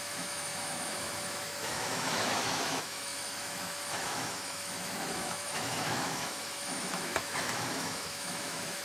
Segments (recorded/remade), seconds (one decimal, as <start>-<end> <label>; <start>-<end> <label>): 0.0-8.8 remade